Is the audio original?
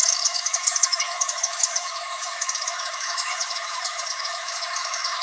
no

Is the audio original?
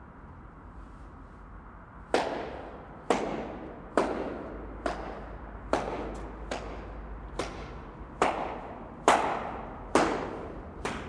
yes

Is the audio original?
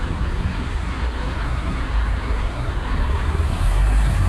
no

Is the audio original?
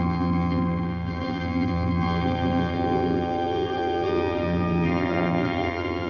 no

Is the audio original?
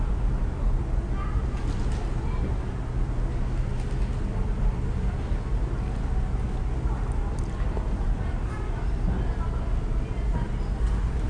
yes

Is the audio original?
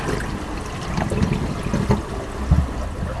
yes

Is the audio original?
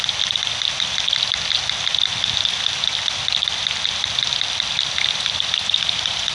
yes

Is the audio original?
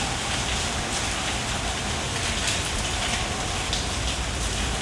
yes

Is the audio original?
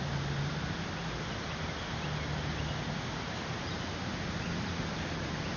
yes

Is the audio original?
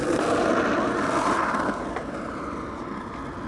yes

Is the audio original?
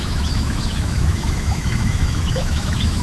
no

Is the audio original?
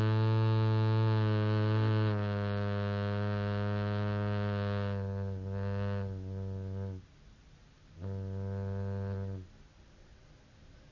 yes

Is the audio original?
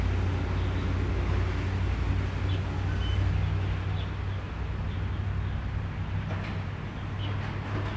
yes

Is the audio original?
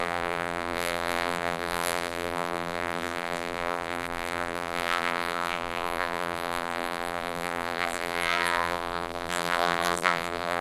no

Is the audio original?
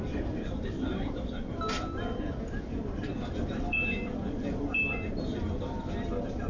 no